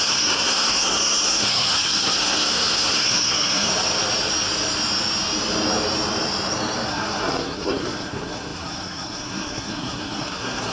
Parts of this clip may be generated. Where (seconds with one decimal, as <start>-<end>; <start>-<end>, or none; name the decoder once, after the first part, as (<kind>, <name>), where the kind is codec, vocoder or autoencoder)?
0.0-3.7 (codec, SNAC); 6.9-10.7